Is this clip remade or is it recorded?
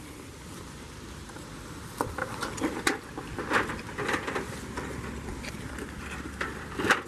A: recorded